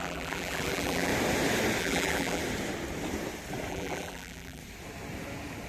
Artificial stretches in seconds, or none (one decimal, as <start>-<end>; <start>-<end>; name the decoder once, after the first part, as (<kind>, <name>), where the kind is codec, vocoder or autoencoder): 0.0-1.1 (vocoder, BigVGAN v2); 1.8-2.4; 3.7-4.6